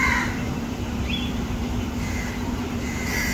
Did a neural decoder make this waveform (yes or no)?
yes